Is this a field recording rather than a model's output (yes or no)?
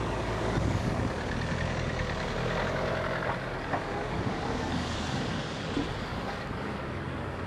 no